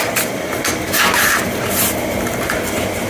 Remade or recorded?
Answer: remade